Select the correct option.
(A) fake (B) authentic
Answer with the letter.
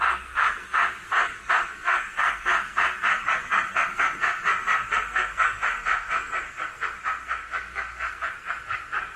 A